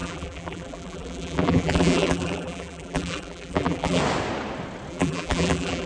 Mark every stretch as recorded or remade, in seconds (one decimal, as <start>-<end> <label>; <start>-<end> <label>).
0.0-4.0 remade; 4.0-4.9 recorded; 4.9-5.9 remade